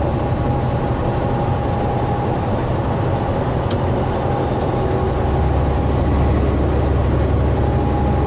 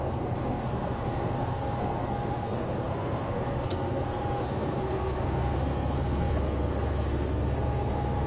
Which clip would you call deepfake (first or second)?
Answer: second